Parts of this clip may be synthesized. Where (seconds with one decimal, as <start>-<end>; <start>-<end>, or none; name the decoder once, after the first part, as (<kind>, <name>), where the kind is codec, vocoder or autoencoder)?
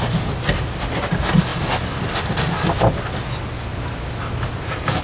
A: none